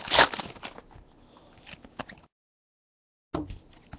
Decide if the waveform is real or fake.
real